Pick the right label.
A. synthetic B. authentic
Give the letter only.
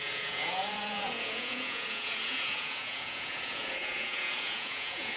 A